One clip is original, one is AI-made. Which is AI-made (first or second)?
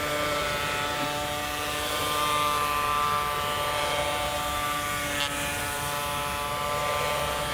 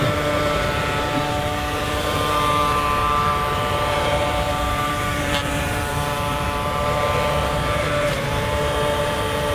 second